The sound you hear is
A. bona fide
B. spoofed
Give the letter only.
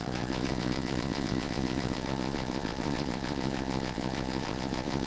B